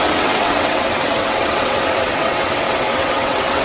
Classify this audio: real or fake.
fake